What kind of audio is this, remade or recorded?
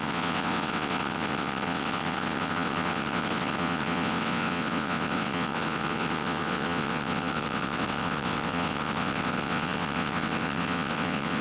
remade